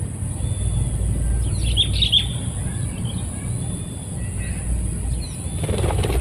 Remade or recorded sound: recorded